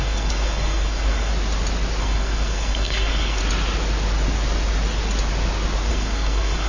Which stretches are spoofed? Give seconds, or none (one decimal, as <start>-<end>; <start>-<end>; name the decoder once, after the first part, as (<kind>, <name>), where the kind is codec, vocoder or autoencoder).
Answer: 0.0-1.3 (codec, SNAC); 2.0-3.4; 5.9-6.7